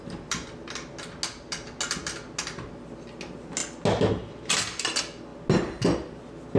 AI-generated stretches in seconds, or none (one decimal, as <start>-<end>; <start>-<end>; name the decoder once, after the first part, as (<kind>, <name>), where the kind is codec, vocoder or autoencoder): none